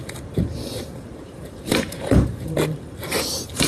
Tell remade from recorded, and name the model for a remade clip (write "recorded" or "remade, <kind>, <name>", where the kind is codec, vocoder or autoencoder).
remade, vocoder, BigVGAN v2